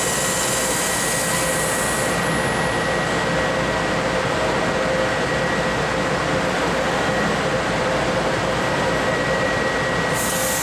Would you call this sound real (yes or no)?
yes